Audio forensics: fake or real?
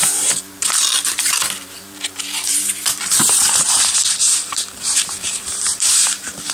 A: fake